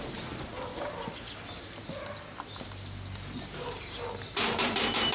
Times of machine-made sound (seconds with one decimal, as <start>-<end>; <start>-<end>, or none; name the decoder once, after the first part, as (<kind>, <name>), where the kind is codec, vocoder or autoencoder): 0.0-0.5 (vocoder, BigVGAN v2); 3.4-5.1